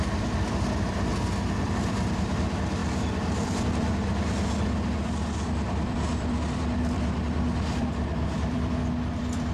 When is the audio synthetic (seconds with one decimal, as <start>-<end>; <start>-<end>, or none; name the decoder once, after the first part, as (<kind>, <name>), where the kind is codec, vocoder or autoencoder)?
0.0-1.1 (vocoder, BigVGAN v2); 1.6-9.5